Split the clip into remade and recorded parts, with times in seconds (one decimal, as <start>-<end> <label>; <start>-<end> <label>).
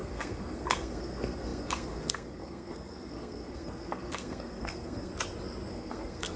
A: 0.0-5.1 remade; 5.1-5.7 recorded; 5.7-6.4 remade